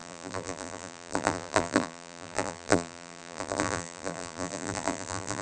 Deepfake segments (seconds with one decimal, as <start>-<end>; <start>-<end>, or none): 0.0-5.4

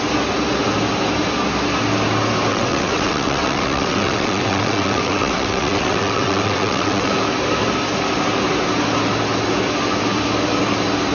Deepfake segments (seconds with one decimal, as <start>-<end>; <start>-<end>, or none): 2.5-7.1